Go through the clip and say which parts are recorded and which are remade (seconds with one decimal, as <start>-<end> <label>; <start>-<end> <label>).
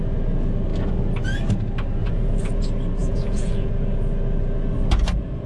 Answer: 0.0-2.0 recorded; 2.0-2.6 remade; 2.6-3.0 recorded; 3.0-3.7 remade; 3.7-5.5 recorded